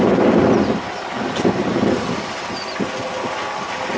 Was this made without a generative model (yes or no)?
yes